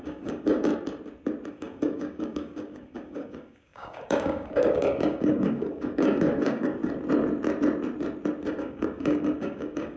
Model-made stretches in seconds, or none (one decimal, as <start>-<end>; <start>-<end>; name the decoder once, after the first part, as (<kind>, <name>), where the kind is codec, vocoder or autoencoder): 0.0-0.7 (codec, DAC); 1.5-6.8; 8.5-10.0